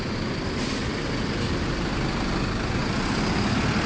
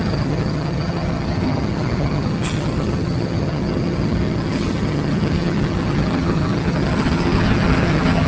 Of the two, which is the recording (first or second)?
first